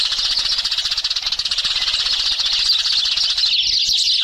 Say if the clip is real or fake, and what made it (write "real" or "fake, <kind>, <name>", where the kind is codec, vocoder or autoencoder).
real